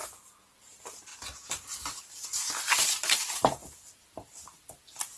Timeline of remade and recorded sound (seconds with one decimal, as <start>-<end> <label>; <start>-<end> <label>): 0.0-0.6 recorded; 0.6-1.1 remade; 1.1-2.0 recorded; 2.0-5.2 remade